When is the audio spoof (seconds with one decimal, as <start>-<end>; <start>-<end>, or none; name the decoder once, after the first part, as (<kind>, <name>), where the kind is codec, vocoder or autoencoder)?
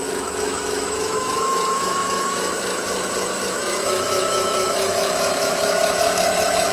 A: 0.0-6.7 (autoencoder, DAC-VAE)